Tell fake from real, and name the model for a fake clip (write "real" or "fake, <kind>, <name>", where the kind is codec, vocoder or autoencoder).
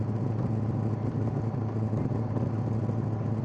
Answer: real